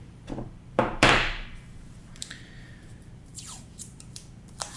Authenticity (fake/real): fake